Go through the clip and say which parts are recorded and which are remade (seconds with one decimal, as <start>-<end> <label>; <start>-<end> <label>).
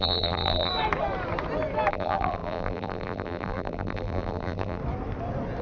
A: 0.0-0.7 remade; 0.7-1.9 recorded; 1.9-4.8 remade; 4.8-5.6 recorded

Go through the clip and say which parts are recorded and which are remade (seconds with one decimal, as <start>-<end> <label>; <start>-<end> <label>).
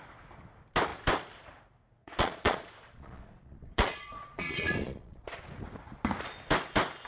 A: 0.0-2.0 recorded; 2.0-5.4 remade; 5.4-7.1 recorded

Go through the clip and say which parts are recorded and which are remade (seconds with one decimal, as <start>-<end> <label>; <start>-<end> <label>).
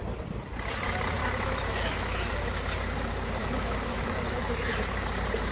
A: 0.0-1.2 recorded; 1.2-2.3 remade; 2.3-3.4 recorded; 3.4-4.7 remade; 4.7-5.5 recorded